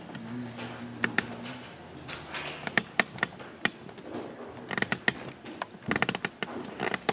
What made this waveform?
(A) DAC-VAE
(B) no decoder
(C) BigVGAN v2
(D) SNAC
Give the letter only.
B